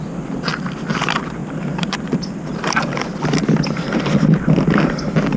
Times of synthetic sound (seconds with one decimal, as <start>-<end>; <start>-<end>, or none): 1.4-2.2